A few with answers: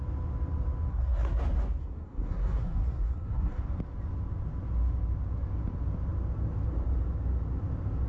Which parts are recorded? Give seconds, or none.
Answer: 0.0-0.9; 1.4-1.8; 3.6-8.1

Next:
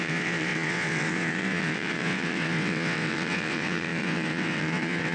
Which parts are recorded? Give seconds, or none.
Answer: none

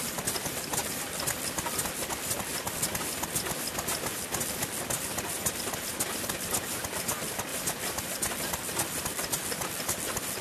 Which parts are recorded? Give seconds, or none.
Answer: 0.0-7.5; 9.0-10.4

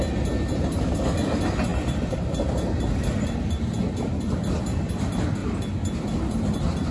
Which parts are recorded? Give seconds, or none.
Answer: 0.0-1.7; 4.6-5.4

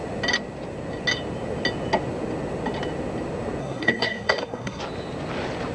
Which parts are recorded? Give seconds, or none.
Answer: 0.0-3.6; 4.8-5.7